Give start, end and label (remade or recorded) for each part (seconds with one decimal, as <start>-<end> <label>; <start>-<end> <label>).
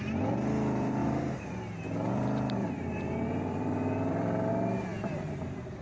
0.0-1.0 recorded; 1.0-4.5 remade; 4.5-5.8 recorded